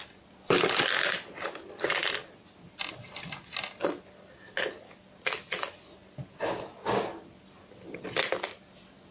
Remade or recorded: recorded